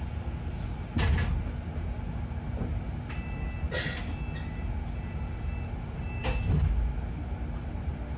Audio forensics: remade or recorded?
recorded